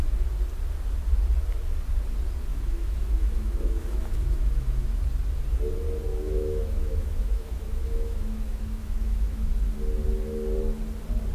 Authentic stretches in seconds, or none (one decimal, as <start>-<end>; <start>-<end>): 0.0-2.5; 5.0-6.1; 9.5-11.3